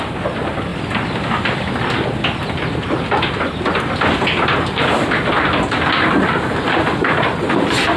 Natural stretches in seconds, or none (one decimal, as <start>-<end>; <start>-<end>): 0.0-8.0